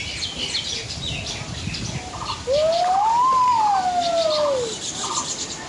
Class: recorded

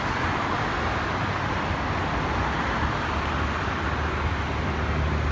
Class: recorded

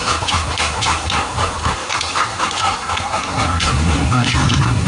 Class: remade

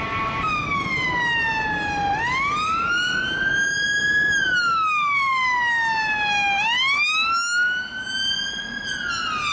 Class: recorded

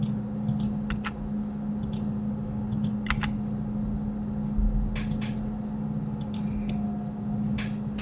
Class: recorded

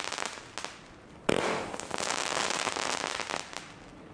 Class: recorded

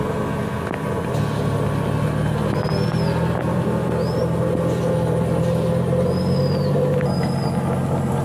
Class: recorded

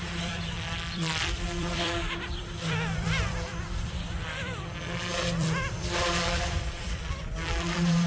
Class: remade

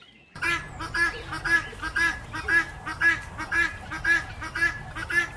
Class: recorded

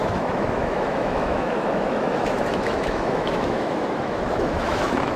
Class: remade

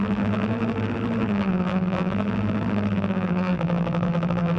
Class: remade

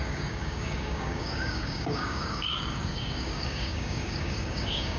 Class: remade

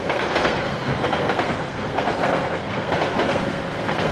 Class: remade